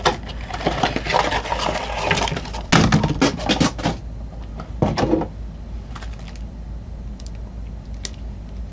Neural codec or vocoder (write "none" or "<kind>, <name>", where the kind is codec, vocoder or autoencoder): none